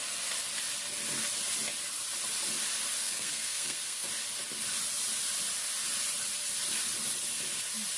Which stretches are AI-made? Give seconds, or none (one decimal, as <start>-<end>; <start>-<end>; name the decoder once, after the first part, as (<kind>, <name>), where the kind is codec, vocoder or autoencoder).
3.0-4.1 (codec, SNAC)